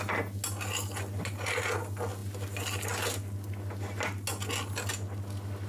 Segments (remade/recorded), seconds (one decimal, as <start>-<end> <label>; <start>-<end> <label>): 0.0-5.7 recorded